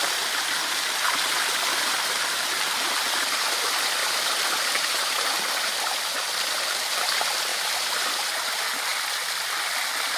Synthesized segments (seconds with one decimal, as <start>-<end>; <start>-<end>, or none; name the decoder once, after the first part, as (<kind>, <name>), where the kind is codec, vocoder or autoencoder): 3.0-3.6 (vocoder, BigVGAN v2); 4.0-6.0; 7.5-8.5